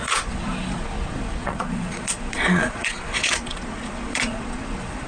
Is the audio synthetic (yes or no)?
yes